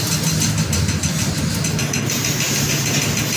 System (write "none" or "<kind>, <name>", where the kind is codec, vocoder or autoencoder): none